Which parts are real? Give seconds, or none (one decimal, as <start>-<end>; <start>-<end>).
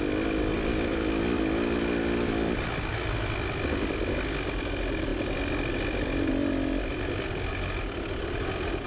0.0-8.9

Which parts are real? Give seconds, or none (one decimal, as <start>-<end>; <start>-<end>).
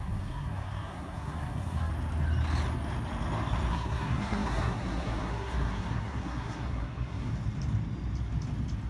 1.9-3.7; 7.3-8.9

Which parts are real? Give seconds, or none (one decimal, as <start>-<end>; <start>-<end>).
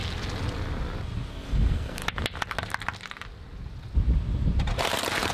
0.0-1.3; 2.0-5.3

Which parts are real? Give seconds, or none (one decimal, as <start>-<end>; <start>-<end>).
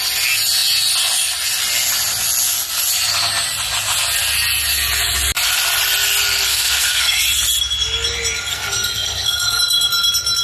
0.0-6.5; 7.2-8.5; 9.6-10.4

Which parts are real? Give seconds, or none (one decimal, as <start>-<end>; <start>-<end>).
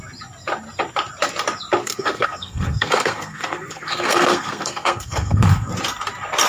0.0-1.8; 5.7-6.5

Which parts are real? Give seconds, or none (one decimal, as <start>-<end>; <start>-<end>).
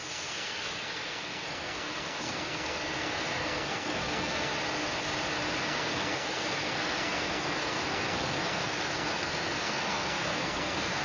4.5-5.6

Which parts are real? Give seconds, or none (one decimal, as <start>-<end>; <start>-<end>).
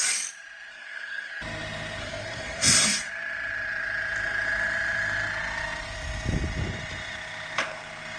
0.0-0.7; 1.3-2.0; 3.1-8.2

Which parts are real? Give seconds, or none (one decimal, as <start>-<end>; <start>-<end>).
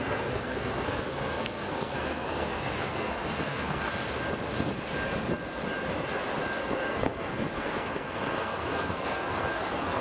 3.9-6.6